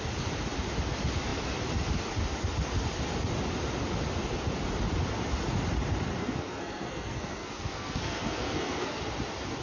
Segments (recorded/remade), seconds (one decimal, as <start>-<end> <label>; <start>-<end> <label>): 0.0-6.2 recorded; 6.2-9.0 remade; 9.0-9.6 recorded